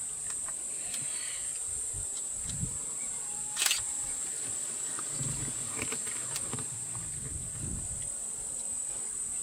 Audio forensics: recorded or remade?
recorded